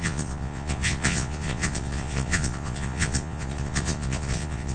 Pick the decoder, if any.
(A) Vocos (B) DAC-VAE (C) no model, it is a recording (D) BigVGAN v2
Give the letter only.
A